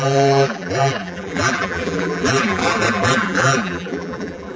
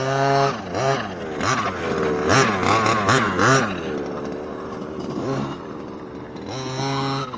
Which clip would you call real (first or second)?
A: second